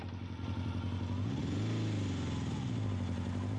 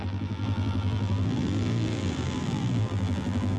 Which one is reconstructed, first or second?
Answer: second